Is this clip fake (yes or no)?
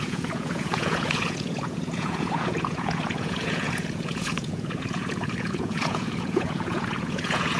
yes